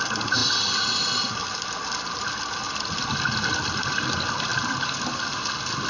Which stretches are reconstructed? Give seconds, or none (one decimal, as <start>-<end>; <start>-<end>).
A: none